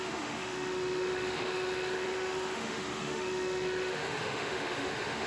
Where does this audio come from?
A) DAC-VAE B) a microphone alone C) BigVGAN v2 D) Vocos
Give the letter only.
A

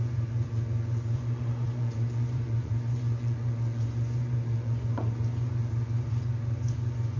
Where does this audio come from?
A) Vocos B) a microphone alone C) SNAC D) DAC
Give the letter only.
A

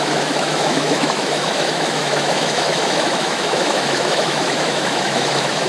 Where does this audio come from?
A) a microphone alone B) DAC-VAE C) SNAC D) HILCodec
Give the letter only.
B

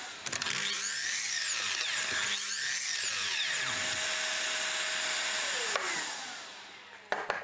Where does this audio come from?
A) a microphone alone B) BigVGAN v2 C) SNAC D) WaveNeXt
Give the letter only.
A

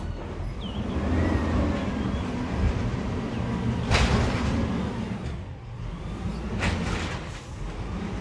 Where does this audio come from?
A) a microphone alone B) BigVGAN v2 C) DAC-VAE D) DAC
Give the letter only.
A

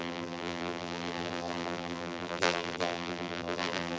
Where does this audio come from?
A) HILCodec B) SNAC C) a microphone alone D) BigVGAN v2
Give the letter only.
D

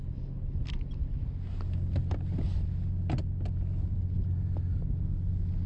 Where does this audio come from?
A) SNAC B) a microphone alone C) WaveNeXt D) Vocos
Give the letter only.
B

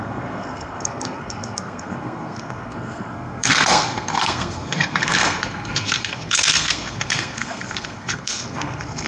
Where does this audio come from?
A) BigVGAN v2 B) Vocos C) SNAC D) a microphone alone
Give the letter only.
C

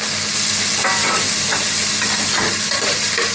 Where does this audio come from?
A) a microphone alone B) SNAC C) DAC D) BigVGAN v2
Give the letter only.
A